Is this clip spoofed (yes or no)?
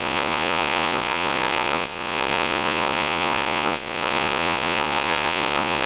yes